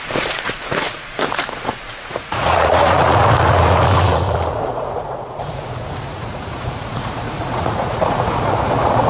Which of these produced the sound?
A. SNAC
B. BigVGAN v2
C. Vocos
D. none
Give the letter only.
C